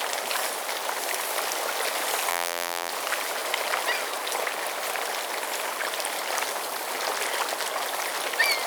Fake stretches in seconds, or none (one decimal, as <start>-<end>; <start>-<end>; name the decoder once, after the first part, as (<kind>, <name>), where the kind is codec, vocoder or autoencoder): 2.3-2.9 (vocoder, BigVGAN v2)